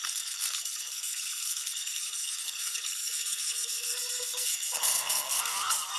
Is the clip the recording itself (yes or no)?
no